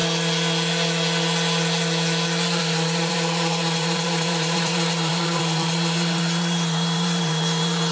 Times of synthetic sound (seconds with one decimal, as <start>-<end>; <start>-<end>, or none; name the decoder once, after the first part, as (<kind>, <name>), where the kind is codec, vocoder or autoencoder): 2.6-7.9 (vocoder, BigVGAN v2)